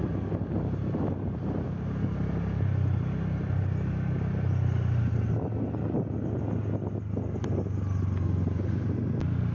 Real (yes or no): yes